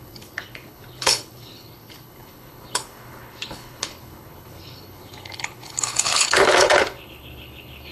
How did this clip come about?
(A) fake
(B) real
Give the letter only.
A